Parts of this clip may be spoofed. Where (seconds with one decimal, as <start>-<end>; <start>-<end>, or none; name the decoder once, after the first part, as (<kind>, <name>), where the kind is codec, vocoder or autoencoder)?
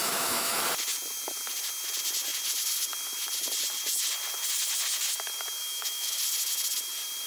0.0-0.6 (autoencoder, DAC-VAE); 5.6-6.2